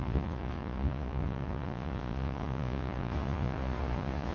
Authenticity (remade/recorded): remade